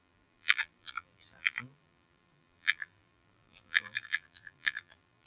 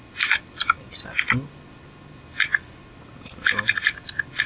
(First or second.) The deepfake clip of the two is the first